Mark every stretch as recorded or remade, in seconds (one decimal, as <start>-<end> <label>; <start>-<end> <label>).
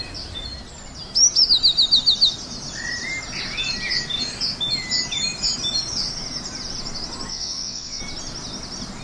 0.0-7.3 recorded; 7.3-8.0 remade; 8.0-9.0 recorded